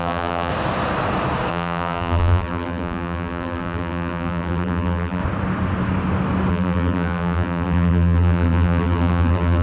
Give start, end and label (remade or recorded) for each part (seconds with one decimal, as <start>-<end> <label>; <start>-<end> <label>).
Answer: 0.0-0.5 remade; 0.5-1.5 recorded; 1.5-5.2 remade; 5.2-6.5 recorded; 6.5-9.6 remade